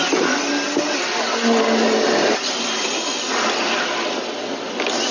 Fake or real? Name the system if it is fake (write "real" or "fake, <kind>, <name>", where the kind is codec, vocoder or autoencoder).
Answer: real